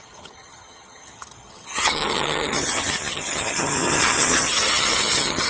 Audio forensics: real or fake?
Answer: fake